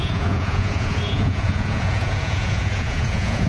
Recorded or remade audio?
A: remade